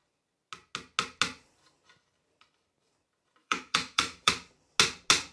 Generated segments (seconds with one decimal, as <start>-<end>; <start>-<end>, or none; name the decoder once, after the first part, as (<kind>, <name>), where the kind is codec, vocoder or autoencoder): 3.4-4.3 (autoencoder, DAC-VAE)